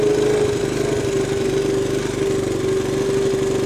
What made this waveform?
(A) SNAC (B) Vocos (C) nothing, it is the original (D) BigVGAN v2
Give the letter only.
C